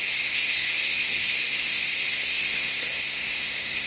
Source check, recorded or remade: remade